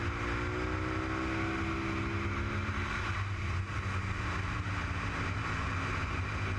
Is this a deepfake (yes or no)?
no